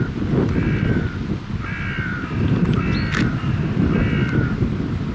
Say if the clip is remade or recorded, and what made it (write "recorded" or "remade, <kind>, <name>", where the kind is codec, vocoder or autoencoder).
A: recorded